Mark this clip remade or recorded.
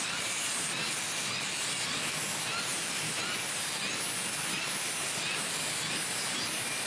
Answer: recorded